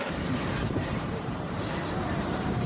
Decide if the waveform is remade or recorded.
remade